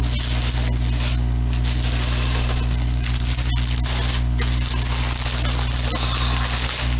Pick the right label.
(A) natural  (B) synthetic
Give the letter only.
A